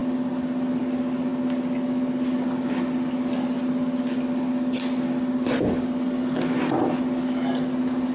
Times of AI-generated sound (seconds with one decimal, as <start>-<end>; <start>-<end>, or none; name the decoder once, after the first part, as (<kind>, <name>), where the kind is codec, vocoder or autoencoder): none